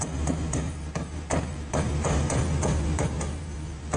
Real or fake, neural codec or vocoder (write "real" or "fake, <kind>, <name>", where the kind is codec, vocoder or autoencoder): fake, vocoder, BigVGAN v2